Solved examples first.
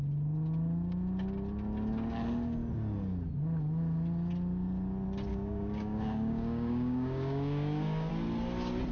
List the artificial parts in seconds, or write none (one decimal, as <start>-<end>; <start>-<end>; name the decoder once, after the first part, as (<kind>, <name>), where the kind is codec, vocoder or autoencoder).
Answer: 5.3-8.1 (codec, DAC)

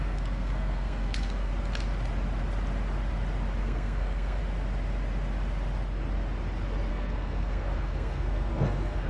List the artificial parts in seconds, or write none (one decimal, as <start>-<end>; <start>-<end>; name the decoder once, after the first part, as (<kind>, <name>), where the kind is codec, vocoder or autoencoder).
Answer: 0.0-1.5 (codec, SNAC); 3.6-4.4; 6.9-9.1

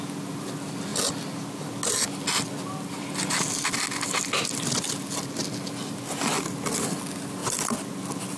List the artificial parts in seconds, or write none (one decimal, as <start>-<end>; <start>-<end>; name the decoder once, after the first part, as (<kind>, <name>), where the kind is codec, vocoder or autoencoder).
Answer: none